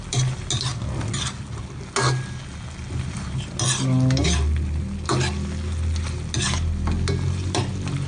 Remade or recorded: recorded